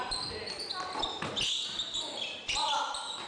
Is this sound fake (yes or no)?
no